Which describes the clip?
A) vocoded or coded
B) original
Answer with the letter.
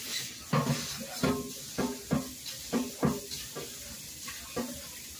B